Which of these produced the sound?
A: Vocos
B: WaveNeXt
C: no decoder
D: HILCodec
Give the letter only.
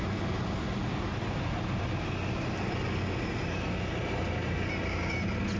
C